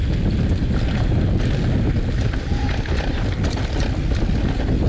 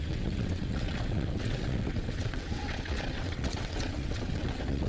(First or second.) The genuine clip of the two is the first